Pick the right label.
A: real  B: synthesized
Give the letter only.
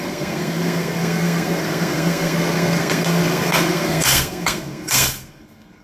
B